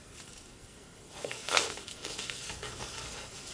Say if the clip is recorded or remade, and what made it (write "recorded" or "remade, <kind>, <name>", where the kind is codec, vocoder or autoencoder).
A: remade, codec, SNAC